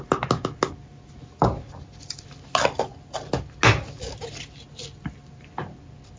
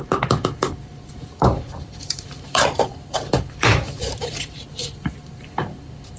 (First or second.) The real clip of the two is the first